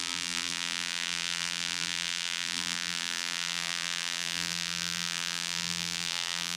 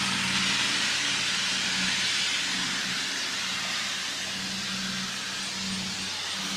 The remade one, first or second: first